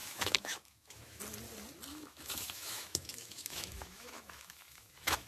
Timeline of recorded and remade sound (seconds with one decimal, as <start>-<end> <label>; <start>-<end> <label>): 0.0-1.2 remade; 1.2-1.9 recorded; 1.9-5.3 remade